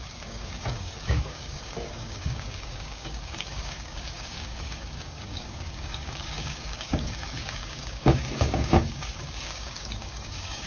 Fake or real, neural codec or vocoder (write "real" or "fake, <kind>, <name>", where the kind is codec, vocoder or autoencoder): fake, codec, DAC